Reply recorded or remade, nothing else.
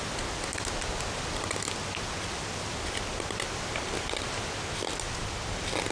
recorded